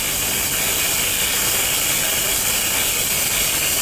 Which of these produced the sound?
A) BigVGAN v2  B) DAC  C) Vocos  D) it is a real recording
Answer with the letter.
D